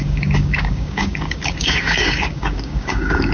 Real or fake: fake